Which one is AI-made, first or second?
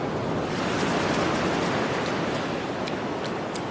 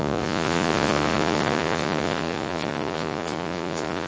second